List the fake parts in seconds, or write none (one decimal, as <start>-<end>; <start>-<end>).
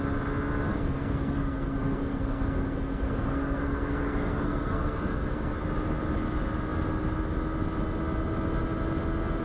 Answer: 0.7-5.5